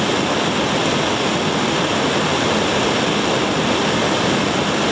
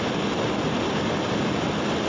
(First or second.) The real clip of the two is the second